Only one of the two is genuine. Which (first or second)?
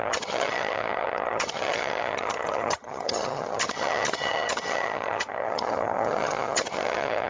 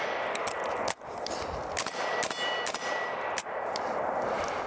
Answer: second